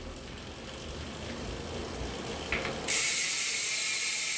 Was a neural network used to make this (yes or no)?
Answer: no